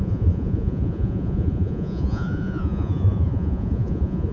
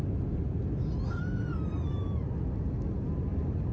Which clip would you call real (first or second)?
second